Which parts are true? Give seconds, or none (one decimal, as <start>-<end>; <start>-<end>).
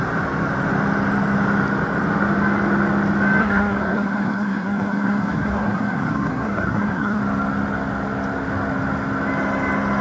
0.0-3.4; 7.2-10.0